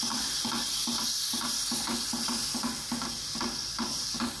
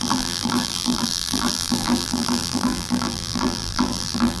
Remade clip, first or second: second